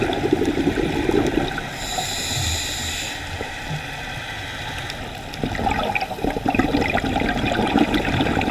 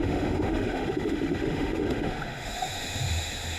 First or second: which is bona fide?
first